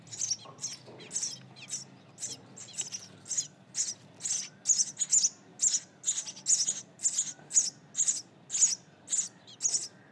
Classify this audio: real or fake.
real